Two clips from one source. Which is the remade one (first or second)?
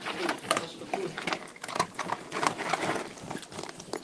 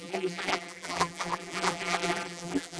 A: second